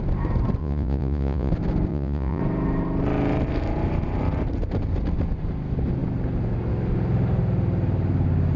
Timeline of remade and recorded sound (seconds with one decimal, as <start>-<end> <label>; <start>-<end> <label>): 0.0-0.6 recorded; 0.6-1.5 remade; 1.5-1.9 recorded; 1.9-2.4 remade; 2.4-8.6 recorded